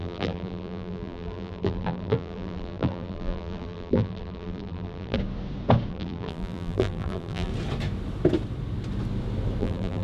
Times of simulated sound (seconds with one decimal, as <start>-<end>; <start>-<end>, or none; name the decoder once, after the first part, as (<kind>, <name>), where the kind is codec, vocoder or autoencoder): 0.0-5.2 (vocoder, BigVGAN v2); 5.9-7.5; 9.6-10.0